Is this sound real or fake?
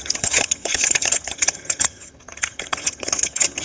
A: fake